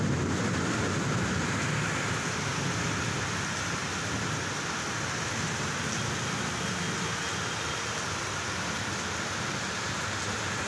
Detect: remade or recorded recorded